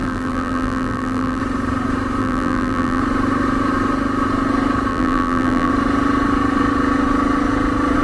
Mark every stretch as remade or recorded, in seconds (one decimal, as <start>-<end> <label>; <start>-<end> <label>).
0.0-1.4 remade; 1.4-2.2 recorded; 2.2-3.0 remade; 3.0-4.9 recorded; 4.9-5.7 remade; 5.7-8.0 recorded

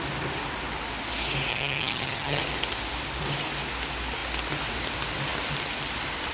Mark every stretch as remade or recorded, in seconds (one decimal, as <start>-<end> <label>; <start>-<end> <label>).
0.0-1.5 recorded; 1.5-2.4 remade; 2.4-6.3 recorded

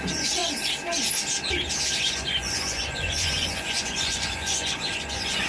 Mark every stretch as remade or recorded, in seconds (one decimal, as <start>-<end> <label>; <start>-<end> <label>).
0.0-0.4 remade; 0.4-2.0 recorded; 2.0-5.5 remade

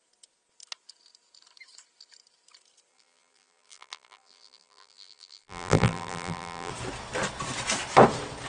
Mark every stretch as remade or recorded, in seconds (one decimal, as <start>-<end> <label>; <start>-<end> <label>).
0.0-2.9 recorded; 2.9-6.7 remade; 6.7-8.5 recorded